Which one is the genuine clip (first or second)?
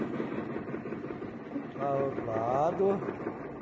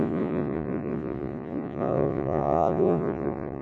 first